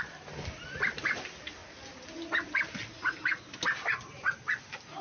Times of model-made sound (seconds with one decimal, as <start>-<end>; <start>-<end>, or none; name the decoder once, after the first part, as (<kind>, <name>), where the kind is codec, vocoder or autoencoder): none